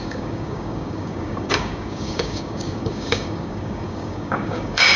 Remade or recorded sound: remade